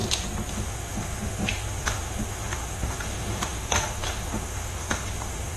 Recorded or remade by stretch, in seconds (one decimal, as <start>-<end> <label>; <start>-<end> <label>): 0.0-0.5 recorded; 0.5-5.6 remade